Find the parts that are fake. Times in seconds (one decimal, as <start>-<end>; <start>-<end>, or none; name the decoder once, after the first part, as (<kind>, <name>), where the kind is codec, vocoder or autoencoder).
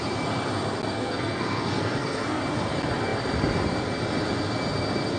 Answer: 0.9-2.4 (codec, SNAC)